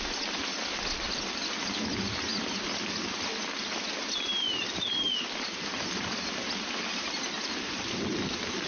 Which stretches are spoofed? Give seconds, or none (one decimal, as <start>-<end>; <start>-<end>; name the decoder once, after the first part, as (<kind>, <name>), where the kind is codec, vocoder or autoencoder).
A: none